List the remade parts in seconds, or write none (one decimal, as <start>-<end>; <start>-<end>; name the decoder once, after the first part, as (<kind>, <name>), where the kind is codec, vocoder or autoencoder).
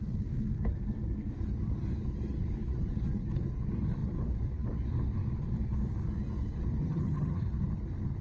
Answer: 6.8-7.4 (vocoder, HiFi-GAN)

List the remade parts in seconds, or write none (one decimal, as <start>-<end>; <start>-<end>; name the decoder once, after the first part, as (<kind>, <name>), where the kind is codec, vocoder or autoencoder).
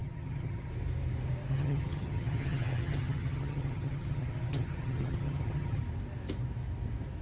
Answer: 0.0-0.7 (vocoder, HiFi-GAN); 1.5-5.8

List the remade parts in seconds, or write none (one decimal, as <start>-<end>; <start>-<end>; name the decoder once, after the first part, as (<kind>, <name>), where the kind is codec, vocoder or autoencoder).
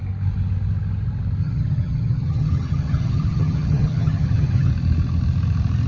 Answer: 1.4-4.7 (vocoder, HiFi-GAN)